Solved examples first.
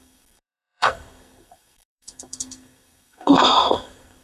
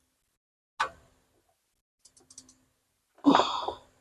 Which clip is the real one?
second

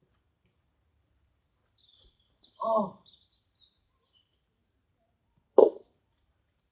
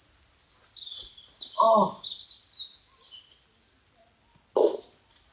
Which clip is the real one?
second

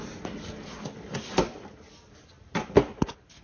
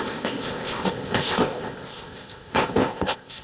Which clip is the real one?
first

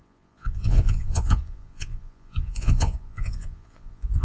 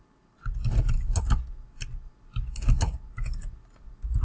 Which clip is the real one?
second